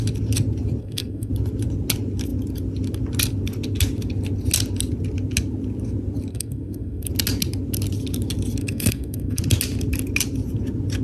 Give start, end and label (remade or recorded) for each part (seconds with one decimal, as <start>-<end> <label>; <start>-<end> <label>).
0.0-0.8 recorded; 0.8-1.3 remade; 1.3-6.3 recorded; 6.3-7.1 remade; 7.1-8.6 recorded; 8.6-9.4 remade; 9.4-11.0 recorded